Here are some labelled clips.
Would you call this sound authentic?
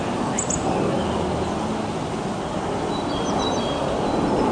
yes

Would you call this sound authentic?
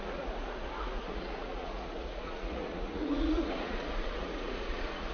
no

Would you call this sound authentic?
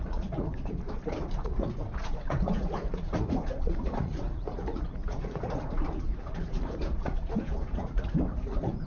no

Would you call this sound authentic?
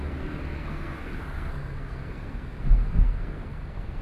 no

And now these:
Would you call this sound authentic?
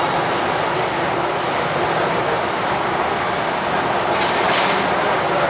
yes